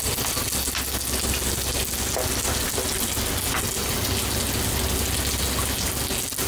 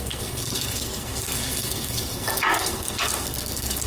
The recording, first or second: first